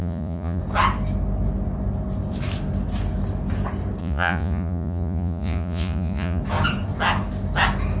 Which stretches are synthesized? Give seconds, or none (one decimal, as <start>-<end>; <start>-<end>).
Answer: 0.0-0.6; 4.0-6.4